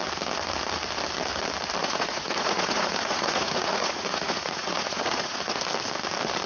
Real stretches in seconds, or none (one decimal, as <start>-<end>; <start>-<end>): 0.0-1.8; 5.6-6.5